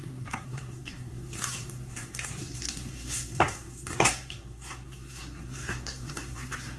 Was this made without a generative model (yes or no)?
no